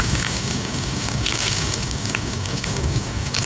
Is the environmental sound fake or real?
fake